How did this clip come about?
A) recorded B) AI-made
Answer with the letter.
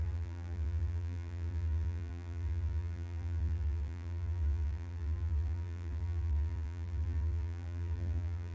B